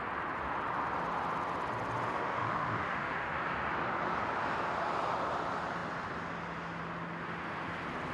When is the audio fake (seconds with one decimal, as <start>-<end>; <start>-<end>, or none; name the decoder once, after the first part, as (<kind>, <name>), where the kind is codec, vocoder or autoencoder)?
2.1-3.3 (autoencoder, DAC-VAE)